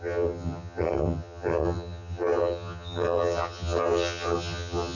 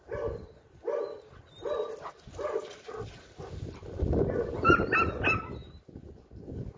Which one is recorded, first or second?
second